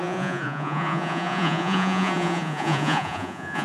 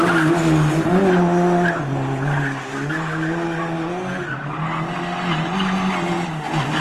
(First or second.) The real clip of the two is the second